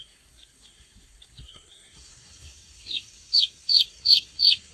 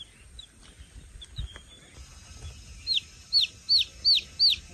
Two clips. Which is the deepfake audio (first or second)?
first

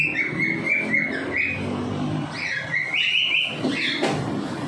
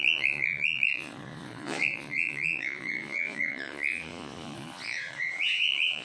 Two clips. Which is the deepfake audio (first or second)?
second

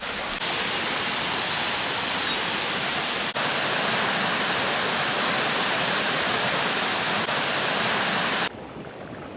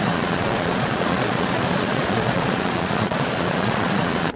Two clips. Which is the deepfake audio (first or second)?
second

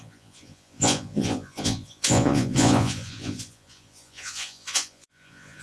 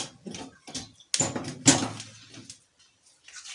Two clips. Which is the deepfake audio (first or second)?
first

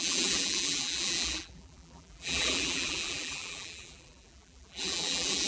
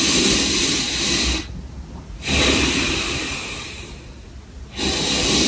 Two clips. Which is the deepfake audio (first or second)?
first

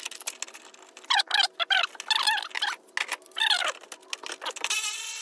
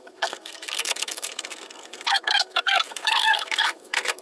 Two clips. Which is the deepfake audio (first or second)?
second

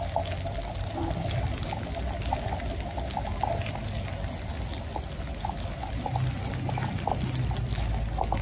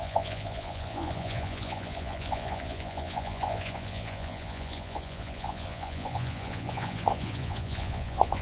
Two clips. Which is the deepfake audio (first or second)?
second